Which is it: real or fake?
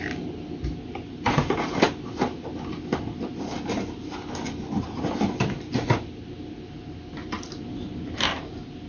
real